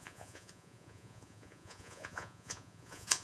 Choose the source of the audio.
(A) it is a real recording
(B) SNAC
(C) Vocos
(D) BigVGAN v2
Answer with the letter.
C